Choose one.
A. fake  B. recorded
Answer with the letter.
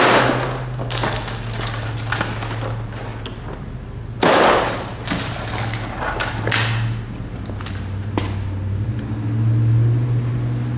B